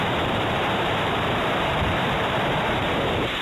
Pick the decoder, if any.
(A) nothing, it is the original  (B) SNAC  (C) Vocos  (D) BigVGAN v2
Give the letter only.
D